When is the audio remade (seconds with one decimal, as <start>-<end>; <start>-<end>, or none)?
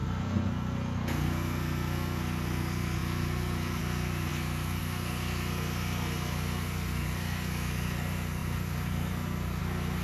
0.0-10.0